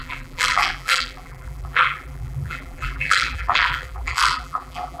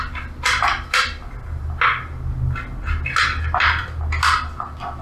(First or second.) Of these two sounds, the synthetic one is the first